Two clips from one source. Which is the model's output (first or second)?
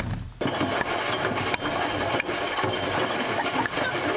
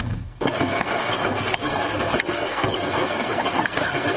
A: second